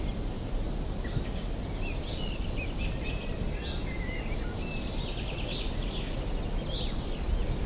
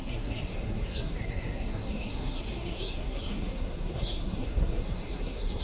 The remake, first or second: second